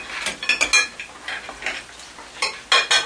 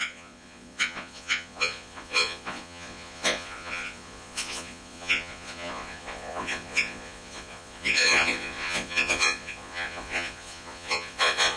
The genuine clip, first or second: first